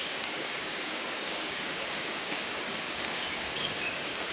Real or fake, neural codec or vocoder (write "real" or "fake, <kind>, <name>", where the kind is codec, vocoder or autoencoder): fake, codec, DAC